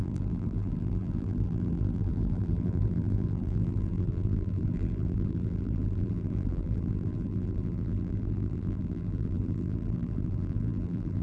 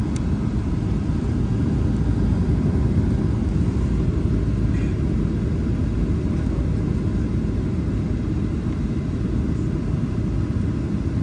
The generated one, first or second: first